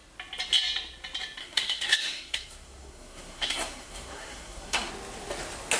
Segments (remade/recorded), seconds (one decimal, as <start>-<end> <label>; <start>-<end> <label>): 0.0-1.4 recorded; 1.4-4.9 remade; 4.9-5.8 recorded